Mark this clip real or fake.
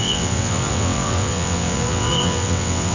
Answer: fake